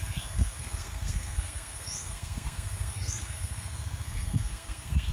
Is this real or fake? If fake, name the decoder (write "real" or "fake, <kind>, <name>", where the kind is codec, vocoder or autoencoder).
fake, codec, SNAC